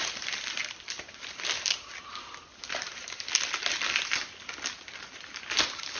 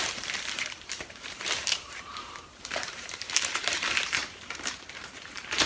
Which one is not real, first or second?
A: second